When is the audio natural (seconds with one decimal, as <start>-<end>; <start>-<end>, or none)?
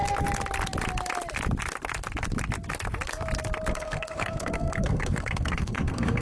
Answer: 0.0-3.7